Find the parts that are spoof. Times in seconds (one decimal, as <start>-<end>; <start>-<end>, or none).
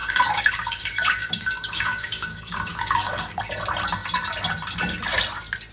0.0-3.4